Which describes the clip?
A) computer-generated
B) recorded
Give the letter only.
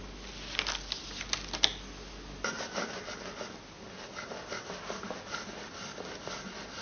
B